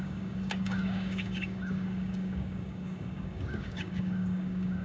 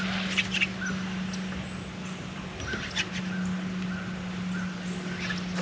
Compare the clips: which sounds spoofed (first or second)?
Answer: first